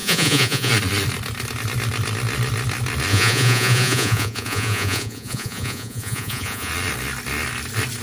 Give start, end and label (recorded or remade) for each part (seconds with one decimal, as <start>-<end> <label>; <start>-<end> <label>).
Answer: 0.0-0.7 remade; 0.7-3.1 recorded; 3.1-6.7 remade; 6.7-8.0 recorded